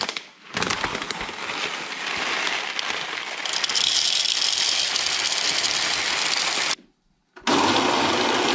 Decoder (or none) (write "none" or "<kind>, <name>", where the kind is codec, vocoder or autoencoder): none